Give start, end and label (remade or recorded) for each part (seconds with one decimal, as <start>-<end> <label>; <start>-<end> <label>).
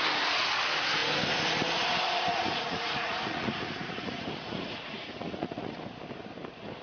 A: 0.0-2.3 recorded; 2.3-5.8 remade; 5.8-6.8 recorded